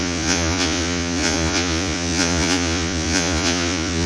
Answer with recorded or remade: remade